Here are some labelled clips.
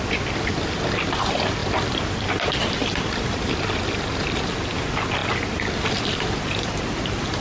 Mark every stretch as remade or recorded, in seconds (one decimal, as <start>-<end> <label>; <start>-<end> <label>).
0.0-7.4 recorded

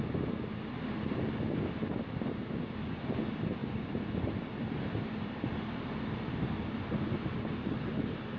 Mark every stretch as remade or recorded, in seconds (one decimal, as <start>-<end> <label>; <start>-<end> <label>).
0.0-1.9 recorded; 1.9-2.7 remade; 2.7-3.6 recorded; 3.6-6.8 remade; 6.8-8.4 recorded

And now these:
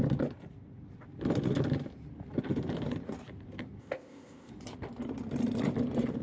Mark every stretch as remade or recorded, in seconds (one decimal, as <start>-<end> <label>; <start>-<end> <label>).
0.0-3.8 recorded; 3.8-4.5 remade; 4.5-6.2 recorded